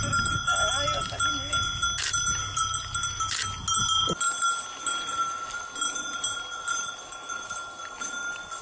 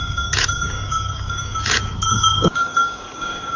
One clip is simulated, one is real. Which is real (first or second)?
first